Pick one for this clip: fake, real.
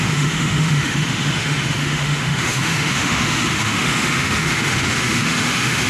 fake